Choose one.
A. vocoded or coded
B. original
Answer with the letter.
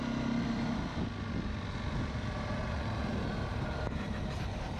B